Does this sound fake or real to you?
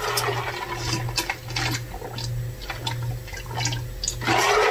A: real